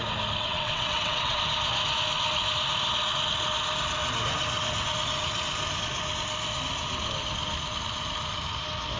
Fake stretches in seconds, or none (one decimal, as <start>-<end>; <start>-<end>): 0.4-1.4